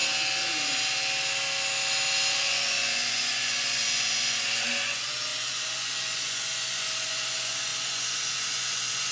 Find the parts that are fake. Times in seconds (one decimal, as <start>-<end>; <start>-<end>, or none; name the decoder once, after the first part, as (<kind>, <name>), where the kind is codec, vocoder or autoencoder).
2.3-9.1 (vocoder, Vocos)